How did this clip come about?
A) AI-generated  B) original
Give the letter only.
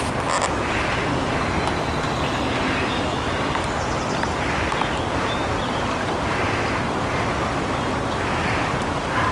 B